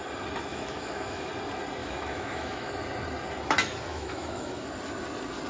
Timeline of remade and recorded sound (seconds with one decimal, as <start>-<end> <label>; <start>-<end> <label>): 0.0-0.5 recorded; 0.5-1.3 remade; 1.3-1.8 recorded; 1.8-2.7 remade; 2.7-3.9 recorded; 3.9-4.7 remade; 4.7-5.5 recorded